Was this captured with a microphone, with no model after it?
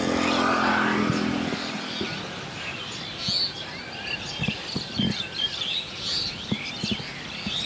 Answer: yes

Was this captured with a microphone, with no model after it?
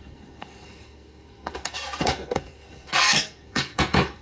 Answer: no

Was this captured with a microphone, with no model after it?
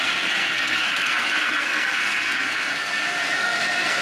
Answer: no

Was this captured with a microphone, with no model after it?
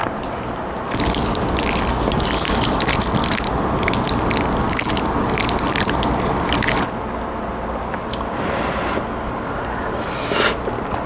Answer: yes